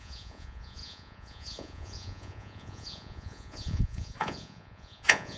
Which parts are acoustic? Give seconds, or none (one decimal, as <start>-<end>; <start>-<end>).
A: none